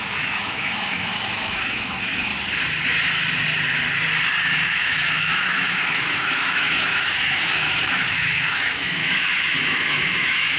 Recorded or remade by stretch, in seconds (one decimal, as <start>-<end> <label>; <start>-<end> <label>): 0.0-2.3 remade; 2.3-4.6 recorded; 4.6-10.6 remade